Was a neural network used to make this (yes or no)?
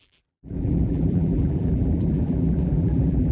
yes